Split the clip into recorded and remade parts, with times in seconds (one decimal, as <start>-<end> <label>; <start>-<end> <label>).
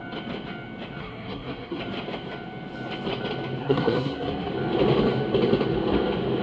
0.0-1.0 recorded; 1.0-1.8 remade; 1.8-3.6 recorded; 3.6-4.5 remade; 4.5-6.4 recorded